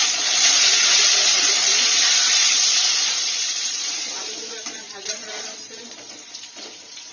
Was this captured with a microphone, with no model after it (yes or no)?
no